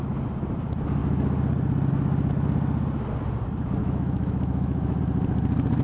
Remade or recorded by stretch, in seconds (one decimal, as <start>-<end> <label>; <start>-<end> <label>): 0.0-3.8 recorded; 3.8-5.0 remade; 5.0-5.8 recorded